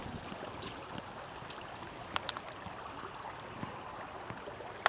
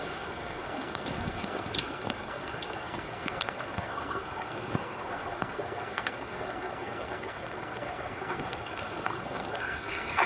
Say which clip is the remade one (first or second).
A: second